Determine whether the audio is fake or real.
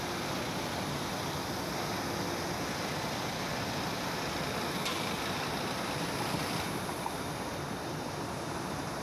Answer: real